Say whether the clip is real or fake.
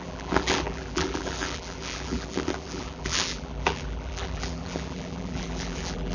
fake